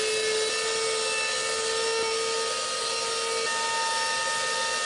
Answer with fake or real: real